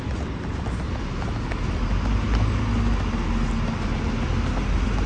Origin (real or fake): real